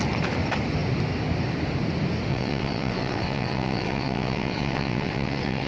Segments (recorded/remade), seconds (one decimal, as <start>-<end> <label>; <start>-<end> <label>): 0.0-2.3 recorded; 2.3-5.7 remade

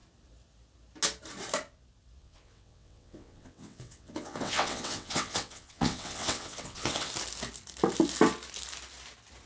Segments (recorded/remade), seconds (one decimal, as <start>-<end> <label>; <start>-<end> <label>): 0.0-2.2 recorded; 2.2-7.1 remade; 7.1-9.5 recorded